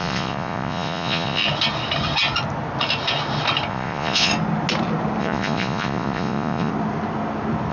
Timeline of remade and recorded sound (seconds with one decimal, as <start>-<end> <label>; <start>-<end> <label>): 0.0-1.4 remade; 1.4-3.7 recorded; 3.7-4.3 remade; 4.3-5.2 recorded; 5.2-6.7 remade; 6.7-7.7 recorded